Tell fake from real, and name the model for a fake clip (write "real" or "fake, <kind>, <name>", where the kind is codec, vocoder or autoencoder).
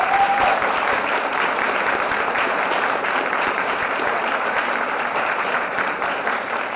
fake, vocoder, BigVGAN v2